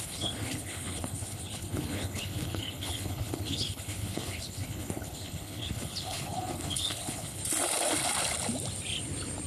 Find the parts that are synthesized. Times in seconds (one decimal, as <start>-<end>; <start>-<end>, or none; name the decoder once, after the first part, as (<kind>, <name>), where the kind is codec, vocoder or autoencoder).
0.0-7.4 (codec, HILCodec)